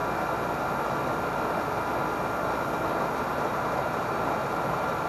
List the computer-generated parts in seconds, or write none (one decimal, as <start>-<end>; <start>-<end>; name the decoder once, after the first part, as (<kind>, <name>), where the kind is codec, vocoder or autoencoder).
3.1-5.1 (vocoder, BigVGAN v2)

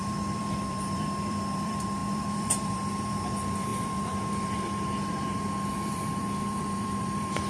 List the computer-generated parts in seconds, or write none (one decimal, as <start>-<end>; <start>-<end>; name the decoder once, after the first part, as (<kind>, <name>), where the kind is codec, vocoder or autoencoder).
0.0-7.5 (vocoder, BigVGAN v2)

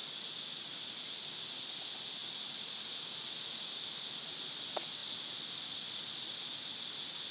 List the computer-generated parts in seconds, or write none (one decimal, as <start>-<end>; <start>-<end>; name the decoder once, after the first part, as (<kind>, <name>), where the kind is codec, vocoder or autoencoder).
0.0-0.7 (vocoder, BigVGAN v2); 2.2-2.9

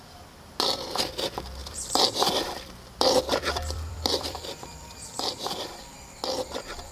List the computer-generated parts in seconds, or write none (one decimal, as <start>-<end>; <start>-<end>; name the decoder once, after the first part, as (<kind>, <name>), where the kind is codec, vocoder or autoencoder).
1.6-5.7 (vocoder, BigVGAN v2)

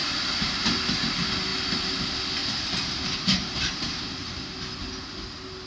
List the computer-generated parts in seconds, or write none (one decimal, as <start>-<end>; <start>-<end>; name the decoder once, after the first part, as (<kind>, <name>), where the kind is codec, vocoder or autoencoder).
0.0-0.6 (vocoder, BigVGAN v2); 2.4-4.0

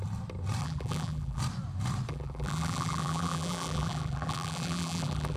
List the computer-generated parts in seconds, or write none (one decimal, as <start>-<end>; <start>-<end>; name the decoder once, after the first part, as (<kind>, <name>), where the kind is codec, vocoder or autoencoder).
0.6-1.4 (vocoder, BigVGAN v2); 2.1-5.4